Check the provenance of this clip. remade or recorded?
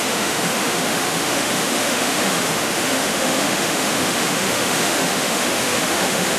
remade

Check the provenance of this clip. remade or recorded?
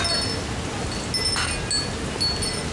recorded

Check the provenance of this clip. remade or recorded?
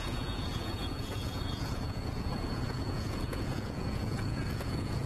remade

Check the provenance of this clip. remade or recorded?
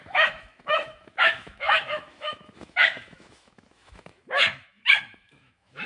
remade